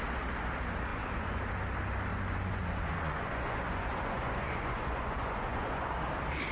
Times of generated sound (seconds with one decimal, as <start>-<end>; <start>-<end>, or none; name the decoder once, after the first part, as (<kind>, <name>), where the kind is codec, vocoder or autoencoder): 0.9-1.4 (vocoder, Vocos); 2.1-6.0